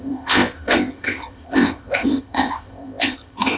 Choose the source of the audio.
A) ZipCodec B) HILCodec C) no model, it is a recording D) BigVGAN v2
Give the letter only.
A